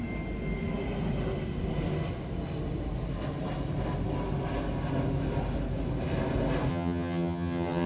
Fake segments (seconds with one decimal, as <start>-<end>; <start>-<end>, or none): 6.7-7.9